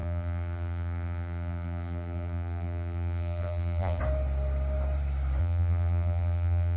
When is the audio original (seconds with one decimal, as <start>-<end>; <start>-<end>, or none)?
4.0-5.4